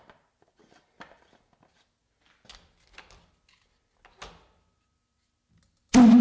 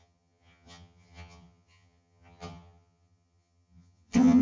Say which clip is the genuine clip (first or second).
first